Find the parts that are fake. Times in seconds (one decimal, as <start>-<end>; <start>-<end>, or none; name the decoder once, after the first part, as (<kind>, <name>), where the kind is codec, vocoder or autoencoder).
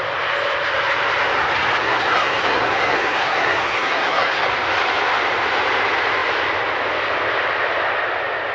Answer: 1.8-4.5 (codec, SNAC)